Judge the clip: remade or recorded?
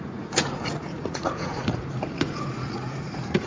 remade